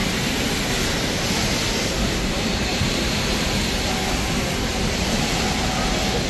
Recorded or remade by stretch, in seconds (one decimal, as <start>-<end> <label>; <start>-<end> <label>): 0.0-2.7 recorded; 2.7-3.9 remade; 3.9-4.7 recorded; 4.7-5.4 remade; 5.4-6.3 recorded